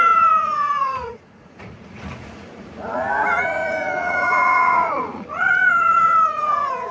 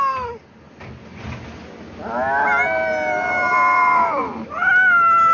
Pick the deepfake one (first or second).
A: first